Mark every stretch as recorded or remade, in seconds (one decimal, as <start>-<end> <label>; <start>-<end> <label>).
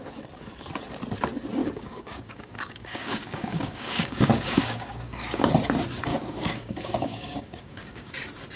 0.0-1.6 recorded; 1.6-5.5 remade; 5.5-6.1 recorded; 6.1-8.1 remade; 8.1-8.6 recorded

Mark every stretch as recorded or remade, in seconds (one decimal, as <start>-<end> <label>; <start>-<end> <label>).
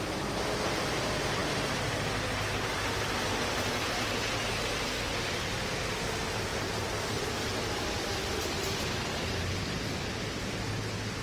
0.0-11.2 recorded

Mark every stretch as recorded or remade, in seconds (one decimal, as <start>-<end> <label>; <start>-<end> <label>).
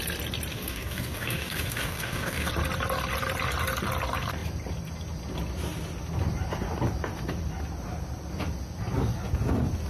0.0-0.5 recorded; 0.5-2.5 remade; 2.5-9.9 recorded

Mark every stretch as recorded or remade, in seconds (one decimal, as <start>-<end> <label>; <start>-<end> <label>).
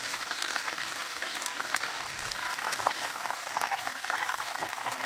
0.0-5.1 remade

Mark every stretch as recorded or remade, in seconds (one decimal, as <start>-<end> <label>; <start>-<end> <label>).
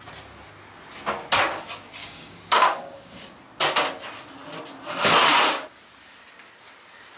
0.0-2.0 recorded; 2.0-3.2 remade; 3.2-7.2 recorded